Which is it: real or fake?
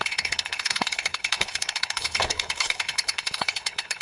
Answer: fake